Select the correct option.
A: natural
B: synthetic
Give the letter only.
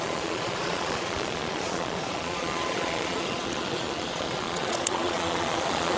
B